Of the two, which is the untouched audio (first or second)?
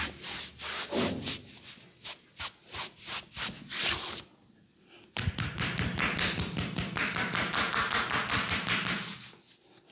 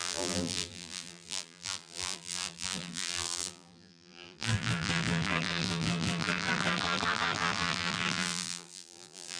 first